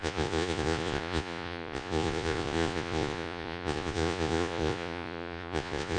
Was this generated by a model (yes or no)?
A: yes